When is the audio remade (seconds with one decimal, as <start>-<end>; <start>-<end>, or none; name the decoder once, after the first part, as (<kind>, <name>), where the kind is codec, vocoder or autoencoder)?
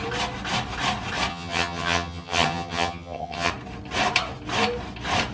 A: 1.3-3.5 (vocoder, HiFi-GAN)